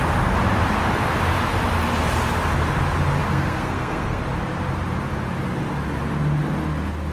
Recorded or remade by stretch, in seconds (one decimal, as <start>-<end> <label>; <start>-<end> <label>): 0.0-3.2 recorded; 3.2-4.2 remade; 4.2-7.1 recorded